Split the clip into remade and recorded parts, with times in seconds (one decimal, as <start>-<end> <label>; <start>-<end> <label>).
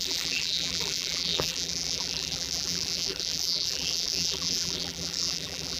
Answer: 0.0-5.8 remade